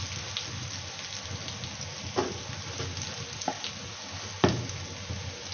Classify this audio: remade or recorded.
recorded